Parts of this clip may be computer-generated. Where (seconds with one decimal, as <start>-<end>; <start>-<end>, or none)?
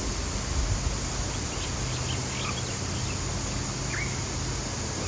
none